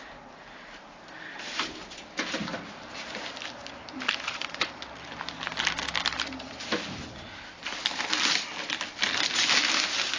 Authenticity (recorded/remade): recorded